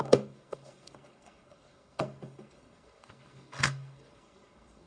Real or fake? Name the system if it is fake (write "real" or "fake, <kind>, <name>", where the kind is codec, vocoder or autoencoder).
fake, codec, SNAC